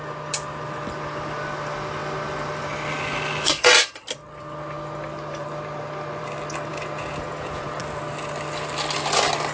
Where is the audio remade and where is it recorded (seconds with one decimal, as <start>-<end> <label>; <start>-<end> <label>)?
0.0-6.7 recorded; 6.7-7.8 remade; 7.8-9.5 recorded